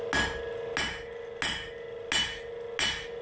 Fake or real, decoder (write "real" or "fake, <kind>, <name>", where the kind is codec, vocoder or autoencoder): real